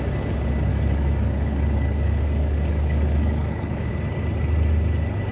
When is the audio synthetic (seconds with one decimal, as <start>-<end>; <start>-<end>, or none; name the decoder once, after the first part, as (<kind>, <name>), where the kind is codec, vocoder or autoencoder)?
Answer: 0.7-3.9 (codec, DAC)